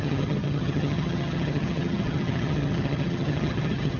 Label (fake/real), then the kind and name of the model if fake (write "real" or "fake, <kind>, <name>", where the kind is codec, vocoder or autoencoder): fake, vocoder, HiFi-GAN